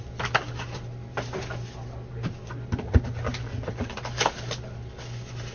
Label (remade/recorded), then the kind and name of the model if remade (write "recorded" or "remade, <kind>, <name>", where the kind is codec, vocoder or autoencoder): recorded